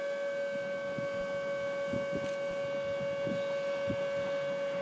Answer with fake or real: real